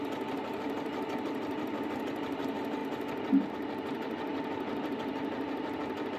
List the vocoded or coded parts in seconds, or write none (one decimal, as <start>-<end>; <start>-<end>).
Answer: 0.0-2.8; 3.5-6.2